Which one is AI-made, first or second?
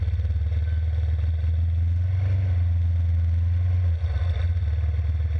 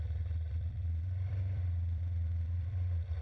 second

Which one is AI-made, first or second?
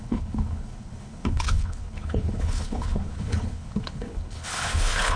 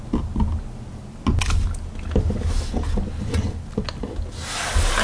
first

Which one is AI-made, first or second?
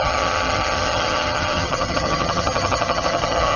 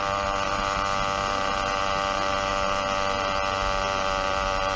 first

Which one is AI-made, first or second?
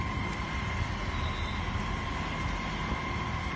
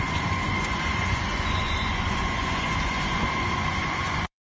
second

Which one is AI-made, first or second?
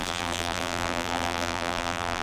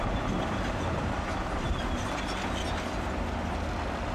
first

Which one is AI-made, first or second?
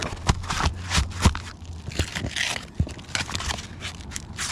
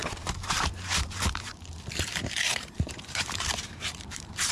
second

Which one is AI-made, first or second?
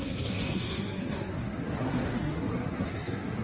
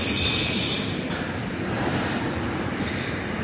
first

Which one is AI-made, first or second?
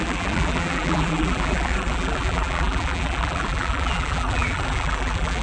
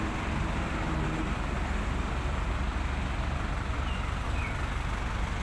first